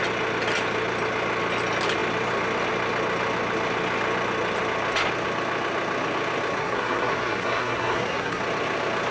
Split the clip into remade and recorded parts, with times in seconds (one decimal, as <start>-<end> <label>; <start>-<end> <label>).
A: 0.0-6.6 recorded; 6.6-8.4 remade; 8.4-9.1 recorded